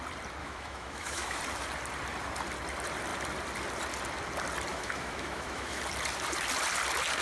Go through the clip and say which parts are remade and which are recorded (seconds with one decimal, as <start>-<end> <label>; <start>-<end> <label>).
0.0-0.4 recorded; 0.4-1.4 remade; 1.4-4.7 recorded; 4.7-5.8 remade; 5.8-7.2 recorded